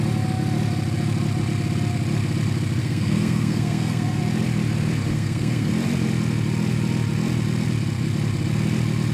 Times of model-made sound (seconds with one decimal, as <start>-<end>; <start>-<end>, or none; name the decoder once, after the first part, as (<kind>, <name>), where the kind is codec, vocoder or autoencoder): 2.8-4.2 (codec, SNAC); 5.1-5.7